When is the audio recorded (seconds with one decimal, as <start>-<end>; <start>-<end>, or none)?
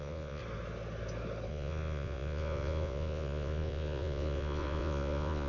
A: 0.4-1.5